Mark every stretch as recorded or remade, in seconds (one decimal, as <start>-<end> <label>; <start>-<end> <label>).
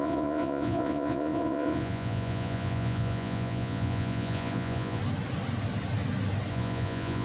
0.0-5.0 remade; 5.0-6.5 recorded; 6.5-7.2 remade